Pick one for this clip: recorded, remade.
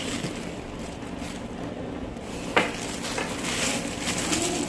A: recorded